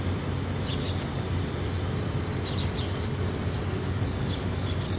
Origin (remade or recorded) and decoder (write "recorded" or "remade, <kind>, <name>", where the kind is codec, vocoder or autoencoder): recorded